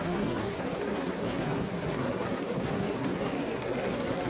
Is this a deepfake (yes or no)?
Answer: yes